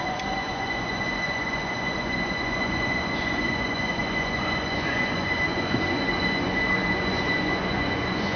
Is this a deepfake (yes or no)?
yes